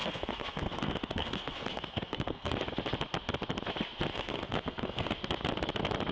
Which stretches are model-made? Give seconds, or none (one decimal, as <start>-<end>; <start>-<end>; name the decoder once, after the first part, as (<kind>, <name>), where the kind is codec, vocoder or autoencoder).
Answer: 0.0-2.5 (codec, SNAC); 4.1-5.1